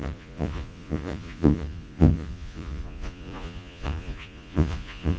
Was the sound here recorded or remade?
remade